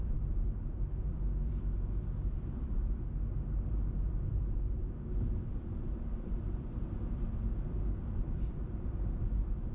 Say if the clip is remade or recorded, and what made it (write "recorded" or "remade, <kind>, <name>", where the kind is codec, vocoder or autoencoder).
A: remade, vocoder, BigVGAN v2